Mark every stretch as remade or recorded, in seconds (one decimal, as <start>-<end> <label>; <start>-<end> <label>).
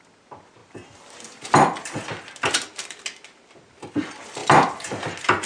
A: 0.0-5.5 recorded